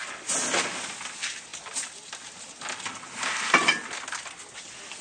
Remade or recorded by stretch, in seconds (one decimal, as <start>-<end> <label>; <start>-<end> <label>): 0.0-5.0 recorded

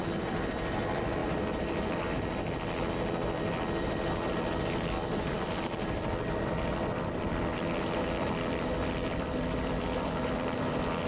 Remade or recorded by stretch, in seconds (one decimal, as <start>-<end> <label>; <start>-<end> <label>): 0.0-1.2 remade; 1.2-4.6 recorded; 4.6-11.1 remade

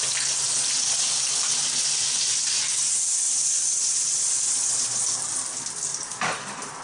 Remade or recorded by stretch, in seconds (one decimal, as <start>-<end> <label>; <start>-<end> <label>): 0.0-2.8 recorded; 2.8-5.2 remade; 5.2-5.9 recorded; 5.9-6.8 remade

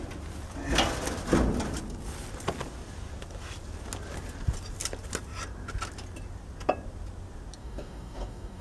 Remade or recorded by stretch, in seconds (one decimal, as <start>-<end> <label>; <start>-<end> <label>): 0.0-7.6 recorded; 7.6-8.6 remade

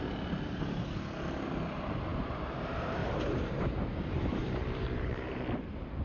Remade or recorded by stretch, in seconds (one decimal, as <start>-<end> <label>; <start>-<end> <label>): 0.0-2.1 recorded; 2.1-2.6 remade; 2.6-3.0 recorded; 3.0-5.4 remade; 5.4-6.0 recorded

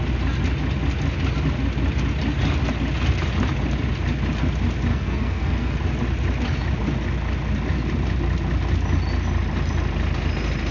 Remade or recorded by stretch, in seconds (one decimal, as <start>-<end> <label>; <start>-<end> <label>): 0.0-4.9 recorded; 4.9-5.8 remade; 5.8-10.7 recorded

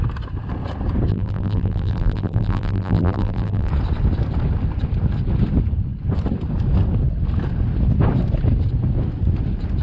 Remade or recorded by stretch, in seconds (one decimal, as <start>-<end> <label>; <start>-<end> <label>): 0.0-1.1 recorded; 1.1-3.7 remade; 3.7-9.8 recorded

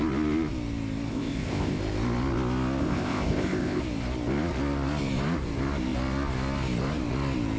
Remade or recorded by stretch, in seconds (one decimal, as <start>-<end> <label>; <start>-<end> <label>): 0.0-1.1 recorded; 1.1-1.8 remade; 1.8-2.8 recorded; 2.8-3.8 remade; 3.8-7.6 recorded